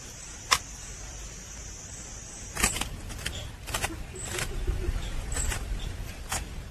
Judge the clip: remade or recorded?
recorded